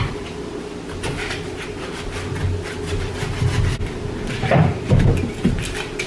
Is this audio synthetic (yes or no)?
no